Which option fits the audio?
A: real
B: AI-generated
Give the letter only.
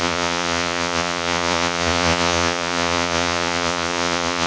B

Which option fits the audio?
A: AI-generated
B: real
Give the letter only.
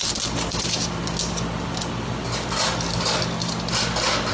B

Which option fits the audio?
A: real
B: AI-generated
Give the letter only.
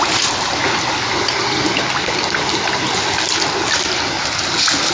A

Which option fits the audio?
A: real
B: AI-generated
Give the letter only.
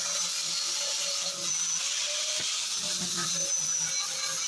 A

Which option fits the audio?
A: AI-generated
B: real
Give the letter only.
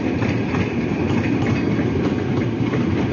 B